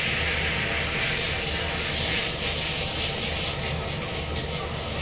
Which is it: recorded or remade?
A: recorded